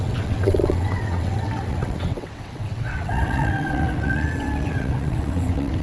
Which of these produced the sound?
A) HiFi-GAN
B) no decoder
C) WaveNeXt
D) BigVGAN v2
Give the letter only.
C